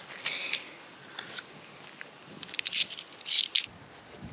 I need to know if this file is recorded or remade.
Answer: recorded